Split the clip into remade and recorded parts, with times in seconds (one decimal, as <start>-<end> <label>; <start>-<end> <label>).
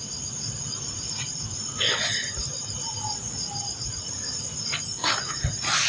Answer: 0.0-2.6 remade; 2.6-3.6 recorded; 3.6-4.9 remade; 4.9-5.9 recorded